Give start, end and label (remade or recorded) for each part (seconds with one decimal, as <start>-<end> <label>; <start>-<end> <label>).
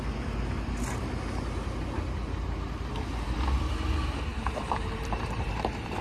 0.0-4.3 recorded; 4.3-6.0 remade